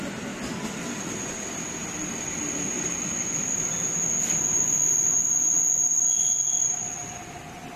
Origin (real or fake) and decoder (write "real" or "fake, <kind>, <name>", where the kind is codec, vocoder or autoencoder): real